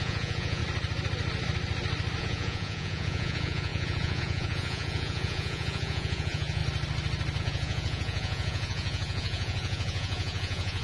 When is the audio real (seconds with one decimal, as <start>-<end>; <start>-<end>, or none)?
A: 0.6-2.2; 6.6-7.4